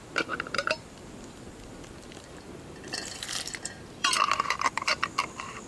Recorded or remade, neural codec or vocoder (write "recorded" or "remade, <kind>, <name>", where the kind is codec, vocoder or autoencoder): remade, vocoder, BigVGAN v2